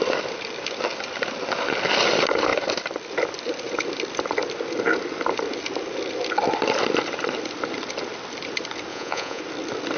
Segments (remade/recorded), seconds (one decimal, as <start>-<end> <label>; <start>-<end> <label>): 0.0-8.9 recorded; 8.9-9.4 remade; 9.4-10.0 recorded